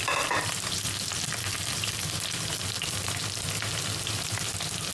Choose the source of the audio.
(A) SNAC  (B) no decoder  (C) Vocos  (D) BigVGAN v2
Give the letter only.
B